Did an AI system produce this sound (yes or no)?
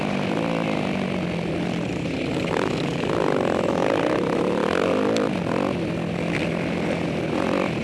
no